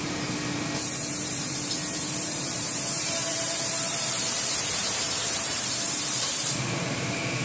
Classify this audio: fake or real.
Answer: fake